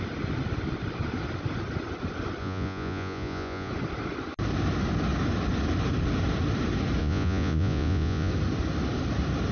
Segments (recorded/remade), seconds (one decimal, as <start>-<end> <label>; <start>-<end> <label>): 0.0-2.4 recorded; 2.4-3.7 remade; 3.7-7.0 recorded; 7.0-8.3 remade; 8.3-9.5 recorded

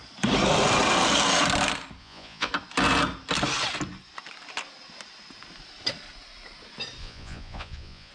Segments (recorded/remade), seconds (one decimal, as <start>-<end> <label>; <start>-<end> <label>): 0.0-2.0 recorded; 2.0-2.5 remade; 2.5-7.0 recorded; 7.0-8.1 remade

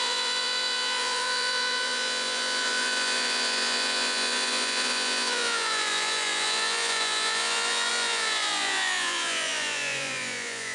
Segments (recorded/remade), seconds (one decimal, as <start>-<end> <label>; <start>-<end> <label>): 0.0-10.7 remade

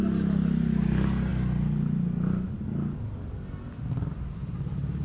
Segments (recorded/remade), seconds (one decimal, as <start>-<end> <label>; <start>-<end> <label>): 0.0-5.0 recorded

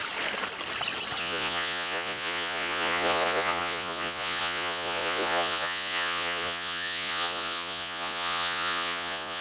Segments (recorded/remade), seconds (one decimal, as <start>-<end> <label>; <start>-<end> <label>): 0.0-1.2 recorded; 1.2-9.4 remade

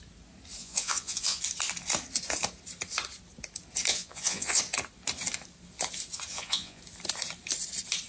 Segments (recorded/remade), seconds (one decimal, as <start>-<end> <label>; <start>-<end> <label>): 0.0-0.6 recorded; 0.6-1.4 remade; 1.4-3.9 recorded; 3.9-4.6 remade; 4.6-6.3 recorded; 6.3-6.8 remade; 6.8-8.1 recorded

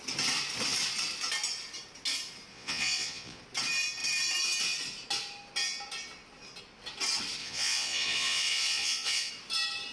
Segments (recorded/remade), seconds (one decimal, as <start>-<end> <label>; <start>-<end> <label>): 0.0-2.5 recorded; 2.5-3.4 remade; 3.4-7.4 recorded; 7.4-9.3 remade; 9.3-9.9 recorded

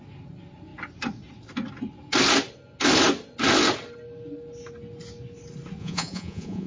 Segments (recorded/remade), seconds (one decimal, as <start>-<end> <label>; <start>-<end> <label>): 0.0-5.8 recorded; 5.8-6.7 remade